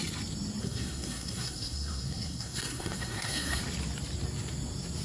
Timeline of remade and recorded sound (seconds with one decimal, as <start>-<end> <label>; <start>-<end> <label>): 0.0-0.6 recorded; 0.6-3.6 remade; 3.6-5.0 recorded